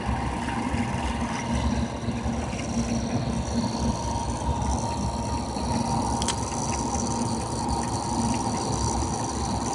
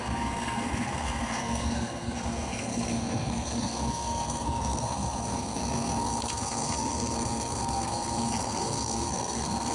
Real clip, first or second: first